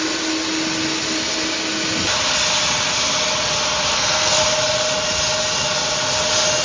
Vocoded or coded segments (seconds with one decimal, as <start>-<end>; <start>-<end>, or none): 3.9-4.4